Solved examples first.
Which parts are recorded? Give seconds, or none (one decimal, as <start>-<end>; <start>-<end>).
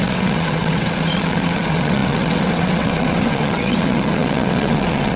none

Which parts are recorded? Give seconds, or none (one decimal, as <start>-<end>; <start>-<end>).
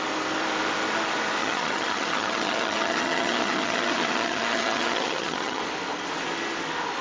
0.0-1.4; 5.6-7.0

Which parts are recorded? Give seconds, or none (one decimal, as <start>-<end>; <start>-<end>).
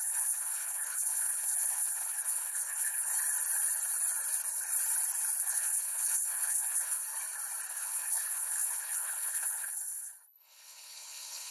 3.1-5.4; 7.0-7.7